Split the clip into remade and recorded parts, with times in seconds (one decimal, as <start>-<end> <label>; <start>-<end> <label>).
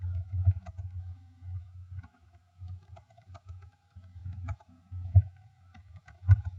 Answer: 0.0-6.6 remade